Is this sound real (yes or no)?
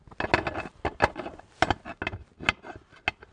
yes